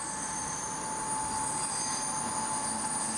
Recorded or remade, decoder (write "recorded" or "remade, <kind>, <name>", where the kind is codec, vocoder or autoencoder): recorded